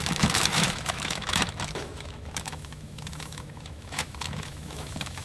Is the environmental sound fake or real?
fake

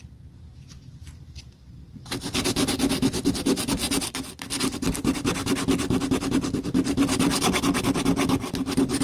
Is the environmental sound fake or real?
real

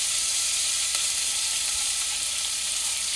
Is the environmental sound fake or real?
fake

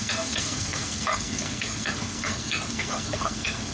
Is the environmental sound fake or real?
fake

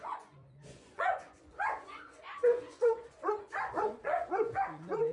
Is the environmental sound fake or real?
fake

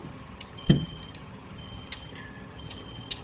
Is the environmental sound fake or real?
fake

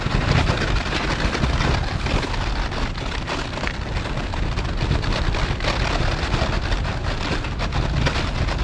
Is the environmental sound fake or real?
real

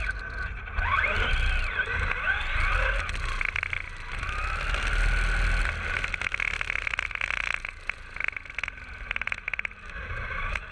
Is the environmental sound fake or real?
real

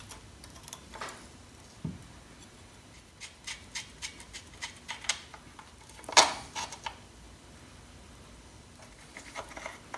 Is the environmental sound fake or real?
real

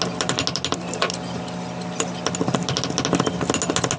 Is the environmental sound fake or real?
real